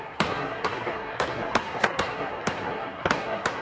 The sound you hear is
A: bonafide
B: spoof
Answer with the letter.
B